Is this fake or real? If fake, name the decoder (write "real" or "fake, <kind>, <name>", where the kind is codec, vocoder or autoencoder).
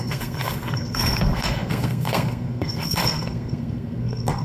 fake, codec, SNAC